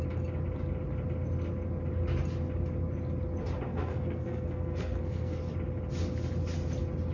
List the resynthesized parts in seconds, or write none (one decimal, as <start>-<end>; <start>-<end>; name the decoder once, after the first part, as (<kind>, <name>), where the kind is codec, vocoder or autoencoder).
3.7-5.4 (codec, SNAC)